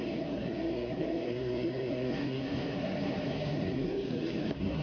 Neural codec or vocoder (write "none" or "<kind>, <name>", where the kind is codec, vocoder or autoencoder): codec, SNAC